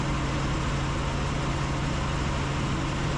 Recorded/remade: recorded